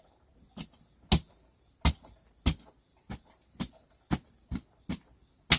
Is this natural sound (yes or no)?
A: yes